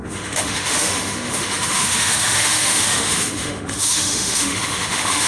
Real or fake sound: fake